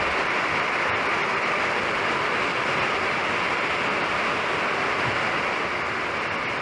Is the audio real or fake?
real